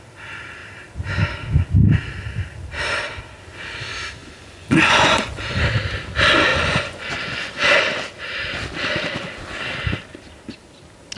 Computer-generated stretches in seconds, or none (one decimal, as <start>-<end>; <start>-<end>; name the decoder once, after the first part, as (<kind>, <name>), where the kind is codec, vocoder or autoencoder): 4.2-5.6 (vocoder, Vocos); 6.5-7.5